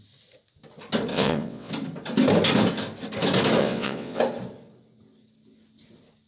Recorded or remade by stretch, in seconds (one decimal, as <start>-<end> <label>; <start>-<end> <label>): 0.0-1.1 recorded; 1.1-1.7 remade; 1.7-3.6 recorded; 3.6-4.2 remade; 4.2-6.3 recorded